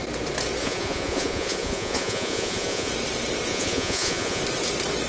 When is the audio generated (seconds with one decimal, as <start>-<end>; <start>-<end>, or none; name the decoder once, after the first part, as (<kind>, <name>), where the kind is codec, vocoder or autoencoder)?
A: 0.6-2.9 (vocoder, Vocos); 3.5-4.4